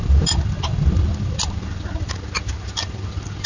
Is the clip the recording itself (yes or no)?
yes